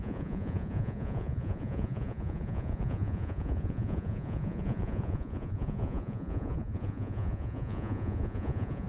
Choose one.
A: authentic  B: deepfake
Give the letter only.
B